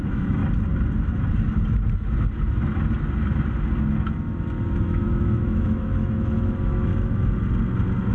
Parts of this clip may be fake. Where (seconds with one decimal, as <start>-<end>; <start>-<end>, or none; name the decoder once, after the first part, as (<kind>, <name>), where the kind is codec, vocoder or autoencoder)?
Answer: 0.0-0.4 (autoencoder, DAC-VAE); 4.8-6.9